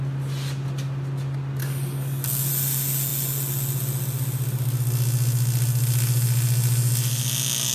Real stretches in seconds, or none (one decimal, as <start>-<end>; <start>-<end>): 0.0-1.6; 2.5-7.7